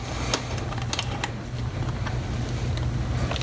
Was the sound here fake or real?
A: real